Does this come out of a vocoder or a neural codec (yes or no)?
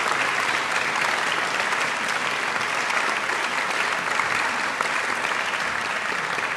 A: no